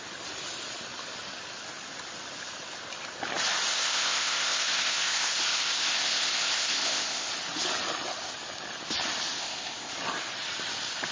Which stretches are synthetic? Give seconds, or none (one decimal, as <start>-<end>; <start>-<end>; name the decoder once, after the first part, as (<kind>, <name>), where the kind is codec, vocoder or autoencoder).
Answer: 3.7-7.3 (codec, ZipCodec); 9.3-9.9